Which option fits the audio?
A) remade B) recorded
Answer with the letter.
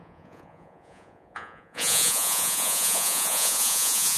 A